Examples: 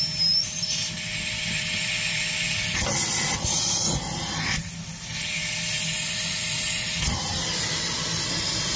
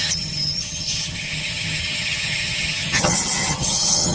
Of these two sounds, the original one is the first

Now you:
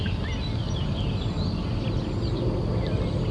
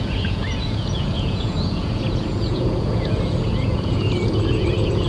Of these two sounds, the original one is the first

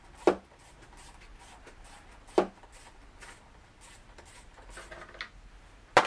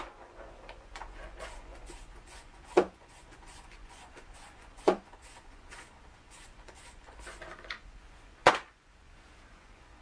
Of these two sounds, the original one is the first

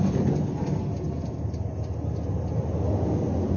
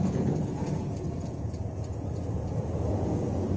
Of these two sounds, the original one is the first